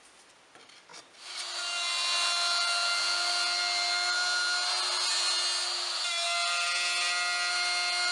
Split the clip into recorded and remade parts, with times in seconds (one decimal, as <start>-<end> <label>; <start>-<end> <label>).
0.0-8.1 recorded